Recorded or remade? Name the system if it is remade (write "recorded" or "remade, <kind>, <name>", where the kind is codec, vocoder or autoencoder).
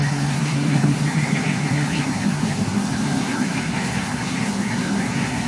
remade, codec, SNAC